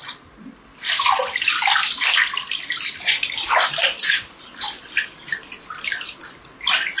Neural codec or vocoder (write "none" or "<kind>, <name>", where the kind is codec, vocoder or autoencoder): none